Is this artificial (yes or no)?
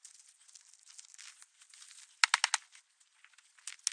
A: no